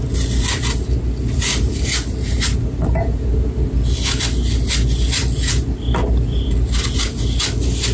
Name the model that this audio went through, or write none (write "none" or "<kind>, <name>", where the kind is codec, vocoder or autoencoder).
none